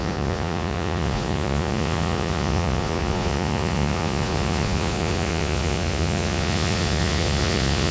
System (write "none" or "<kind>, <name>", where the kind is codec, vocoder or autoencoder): vocoder, Vocos